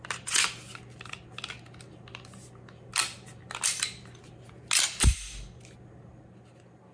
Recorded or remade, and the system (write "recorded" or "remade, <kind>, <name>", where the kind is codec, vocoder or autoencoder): recorded